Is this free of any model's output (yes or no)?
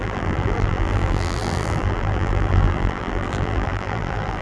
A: no